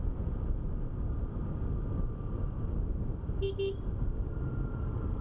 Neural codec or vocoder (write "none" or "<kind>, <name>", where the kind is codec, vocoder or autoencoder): none